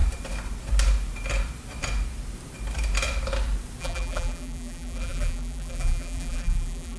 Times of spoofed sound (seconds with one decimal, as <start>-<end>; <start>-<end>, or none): 3.8-7.0